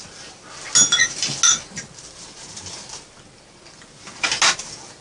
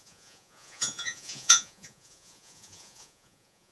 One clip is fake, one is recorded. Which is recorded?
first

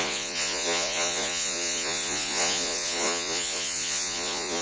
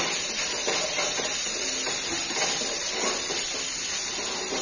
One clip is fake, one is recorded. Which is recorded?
second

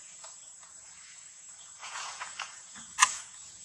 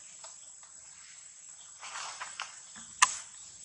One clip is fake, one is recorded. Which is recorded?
second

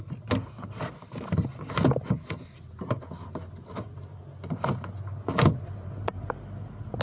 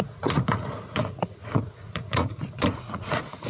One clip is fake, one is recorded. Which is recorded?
first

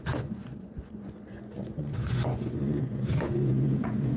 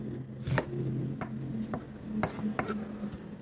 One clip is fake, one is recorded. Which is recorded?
second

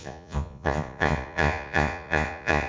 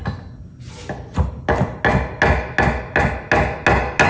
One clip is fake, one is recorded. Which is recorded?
second